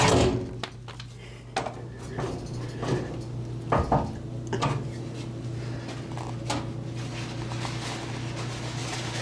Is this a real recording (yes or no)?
yes